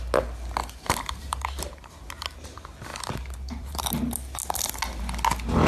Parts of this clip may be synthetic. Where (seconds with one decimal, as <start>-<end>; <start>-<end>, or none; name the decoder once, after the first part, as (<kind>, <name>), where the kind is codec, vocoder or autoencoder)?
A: 0.6-1.9 (vocoder, BigVGAN v2); 2.9-3.9